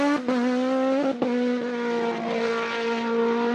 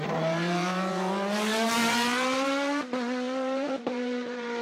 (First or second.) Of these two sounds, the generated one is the second